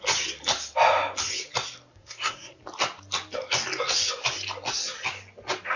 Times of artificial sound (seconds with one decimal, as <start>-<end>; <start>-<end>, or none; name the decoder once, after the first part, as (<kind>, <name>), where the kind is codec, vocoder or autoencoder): 1.9-2.6 (codec, SNAC)